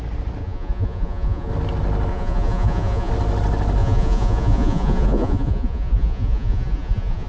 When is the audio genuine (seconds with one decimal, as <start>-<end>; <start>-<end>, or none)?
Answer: 0.0-0.4; 1.5-2.1; 3.1-3.8

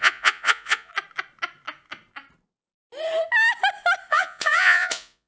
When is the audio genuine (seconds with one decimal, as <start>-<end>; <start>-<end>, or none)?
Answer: 0.9-4.1

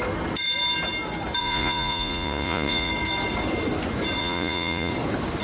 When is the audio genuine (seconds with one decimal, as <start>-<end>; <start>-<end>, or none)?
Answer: 0.0-1.4; 2.9-4.2; 4.9-5.4

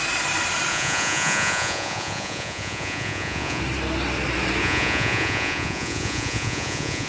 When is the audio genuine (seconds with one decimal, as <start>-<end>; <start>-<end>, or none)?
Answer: 0.0-0.7; 3.6-4.6

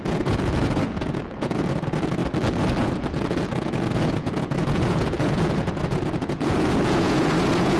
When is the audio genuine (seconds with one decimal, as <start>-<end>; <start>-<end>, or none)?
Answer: 2.2-2.8

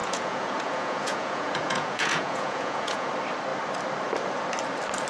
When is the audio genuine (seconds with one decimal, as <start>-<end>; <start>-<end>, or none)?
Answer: 3.1-5.1

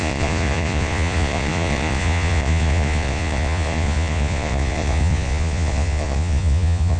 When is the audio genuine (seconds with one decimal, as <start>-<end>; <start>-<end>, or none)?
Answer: none